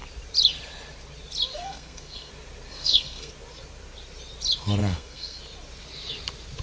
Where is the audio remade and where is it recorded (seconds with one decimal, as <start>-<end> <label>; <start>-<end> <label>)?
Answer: 0.0-1.5 recorded; 1.5-2.3 remade; 2.3-2.7 recorded; 2.7-3.3 remade; 3.3-4.8 recorded; 4.8-5.4 remade; 5.4-6.6 recorded